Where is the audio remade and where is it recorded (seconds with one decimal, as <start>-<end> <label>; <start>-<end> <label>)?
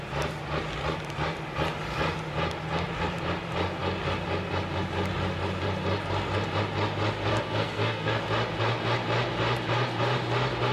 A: 0.0-7.3 recorded; 7.3-8.2 remade; 8.2-10.7 recorded